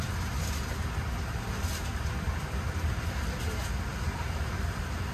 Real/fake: real